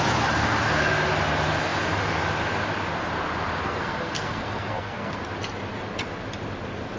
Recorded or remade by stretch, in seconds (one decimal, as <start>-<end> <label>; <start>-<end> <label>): 0.0-3.6 recorded; 3.6-5.2 remade; 5.2-7.0 recorded